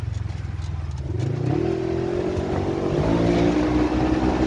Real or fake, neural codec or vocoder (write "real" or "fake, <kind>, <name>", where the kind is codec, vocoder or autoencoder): real